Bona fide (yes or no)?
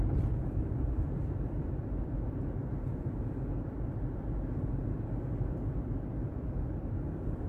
no